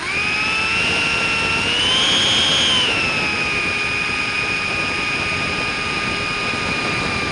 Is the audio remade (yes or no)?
no